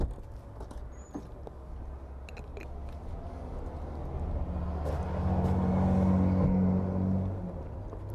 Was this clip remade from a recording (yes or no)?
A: no